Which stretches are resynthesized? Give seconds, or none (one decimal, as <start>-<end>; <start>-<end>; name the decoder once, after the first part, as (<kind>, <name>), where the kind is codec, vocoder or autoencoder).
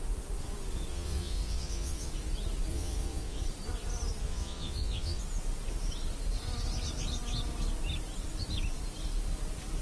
0.9-2.1 (vocoder, Vocos); 2.7-3.4; 4.2-5.2